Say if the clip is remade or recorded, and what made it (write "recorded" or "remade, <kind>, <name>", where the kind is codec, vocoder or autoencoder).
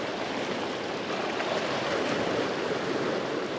recorded